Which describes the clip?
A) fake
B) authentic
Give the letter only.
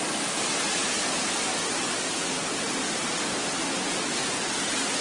B